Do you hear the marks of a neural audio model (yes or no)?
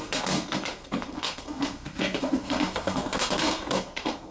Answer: yes